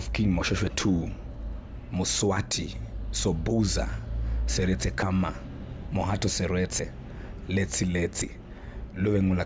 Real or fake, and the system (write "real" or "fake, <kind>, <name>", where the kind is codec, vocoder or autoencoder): real